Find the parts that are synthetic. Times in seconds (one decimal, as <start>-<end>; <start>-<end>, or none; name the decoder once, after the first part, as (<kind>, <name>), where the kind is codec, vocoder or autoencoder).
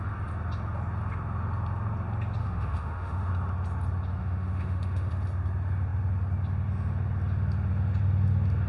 2.4-3.3 (autoencoder, DAC-VAE); 4.2-5.1